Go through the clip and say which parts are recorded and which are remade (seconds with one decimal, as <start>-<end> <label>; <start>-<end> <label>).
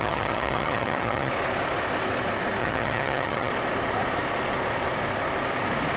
0.0-1.3 remade; 1.3-2.6 recorded; 2.6-3.5 remade; 3.5-6.0 recorded